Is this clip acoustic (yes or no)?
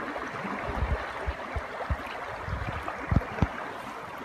yes